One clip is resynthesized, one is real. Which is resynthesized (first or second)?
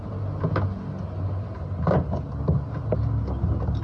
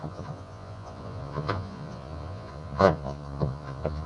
second